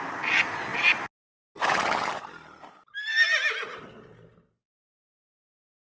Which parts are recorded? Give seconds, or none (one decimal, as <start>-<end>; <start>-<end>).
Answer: 0.0-5.9